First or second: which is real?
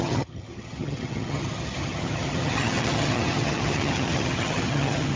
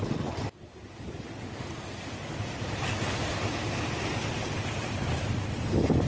second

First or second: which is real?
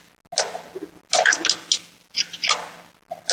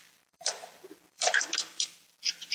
first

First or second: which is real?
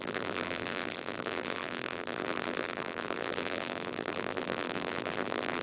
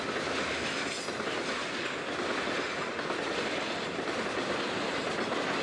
second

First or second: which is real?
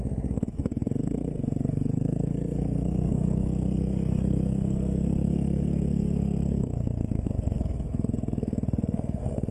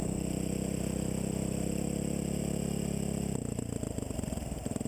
second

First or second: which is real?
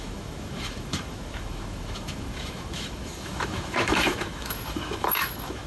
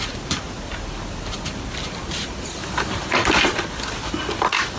second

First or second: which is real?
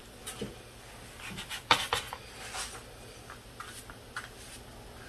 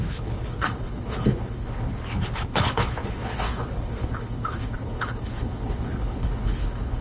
first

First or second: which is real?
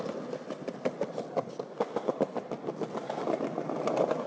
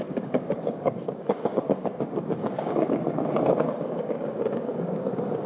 first